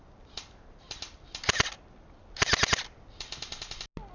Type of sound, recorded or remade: recorded